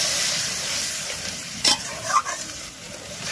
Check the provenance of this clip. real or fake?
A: fake